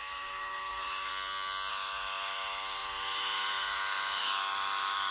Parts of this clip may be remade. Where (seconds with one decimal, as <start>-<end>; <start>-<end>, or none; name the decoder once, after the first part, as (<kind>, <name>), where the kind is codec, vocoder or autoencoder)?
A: 0.0-1.1 (autoencoder, DAC-VAE); 1.7-5.1